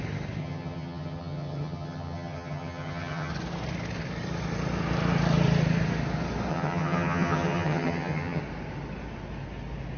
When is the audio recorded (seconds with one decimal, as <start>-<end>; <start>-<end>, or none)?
0.0-0.4; 3.3-6.5; 8.4-10.0